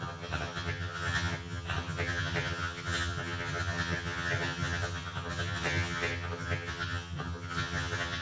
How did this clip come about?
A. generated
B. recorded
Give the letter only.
A